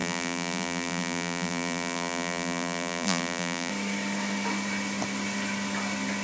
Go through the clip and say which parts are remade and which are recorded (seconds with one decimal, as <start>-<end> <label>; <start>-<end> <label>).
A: 0.0-3.7 remade; 3.7-6.2 recorded

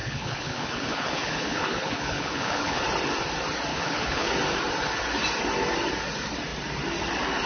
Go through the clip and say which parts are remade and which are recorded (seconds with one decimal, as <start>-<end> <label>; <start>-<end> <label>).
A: 0.0-2.8 remade; 2.8-3.7 recorded; 3.7-4.3 remade; 4.3-7.5 recorded

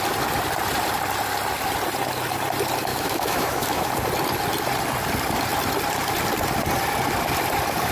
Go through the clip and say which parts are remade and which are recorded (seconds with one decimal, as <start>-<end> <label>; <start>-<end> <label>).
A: 0.0-2.9 recorded; 2.9-3.9 remade; 3.9-7.9 recorded

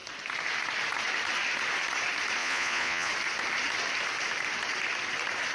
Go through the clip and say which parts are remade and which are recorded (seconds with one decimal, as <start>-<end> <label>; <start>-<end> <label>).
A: 0.0-2.4 recorded; 2.4-3.1 remade; 3.1-5.5 recorded

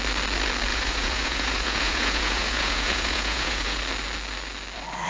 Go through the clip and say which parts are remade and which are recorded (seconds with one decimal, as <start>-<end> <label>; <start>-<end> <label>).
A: 0.0-0.7 recorded; 0.7-3.8 remade; 3.8-5.1 recorded